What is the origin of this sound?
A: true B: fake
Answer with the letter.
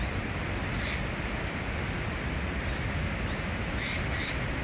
B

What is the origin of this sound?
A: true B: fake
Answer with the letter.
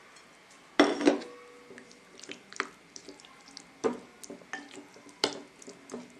A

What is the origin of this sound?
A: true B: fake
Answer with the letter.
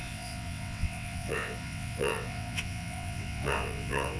B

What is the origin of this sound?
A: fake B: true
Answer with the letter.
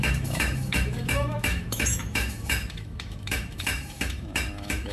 A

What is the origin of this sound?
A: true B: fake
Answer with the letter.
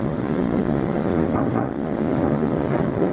B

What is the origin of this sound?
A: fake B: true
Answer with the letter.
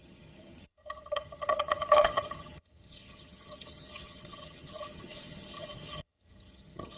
A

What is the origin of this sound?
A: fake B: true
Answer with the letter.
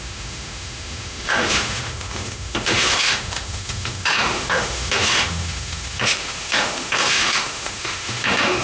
A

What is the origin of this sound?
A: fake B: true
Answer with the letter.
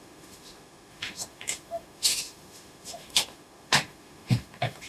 A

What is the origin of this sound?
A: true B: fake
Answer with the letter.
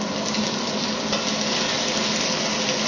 A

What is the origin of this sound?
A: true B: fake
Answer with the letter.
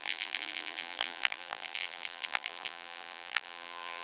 B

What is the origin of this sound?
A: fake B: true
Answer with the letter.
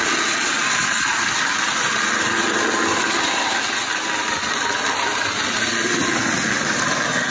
B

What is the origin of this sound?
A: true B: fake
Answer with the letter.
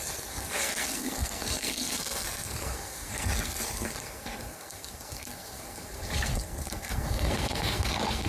B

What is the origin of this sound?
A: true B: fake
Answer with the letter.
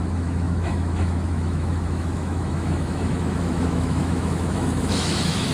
B